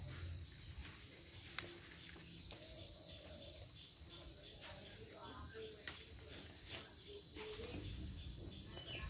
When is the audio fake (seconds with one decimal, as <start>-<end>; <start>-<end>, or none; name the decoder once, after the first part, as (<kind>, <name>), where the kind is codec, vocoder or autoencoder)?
none